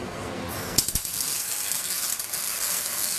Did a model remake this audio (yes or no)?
yes